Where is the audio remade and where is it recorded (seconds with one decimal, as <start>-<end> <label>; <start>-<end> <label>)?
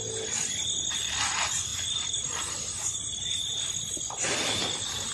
0.0-5.1 recorded